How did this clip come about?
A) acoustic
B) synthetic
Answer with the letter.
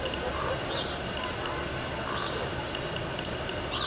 A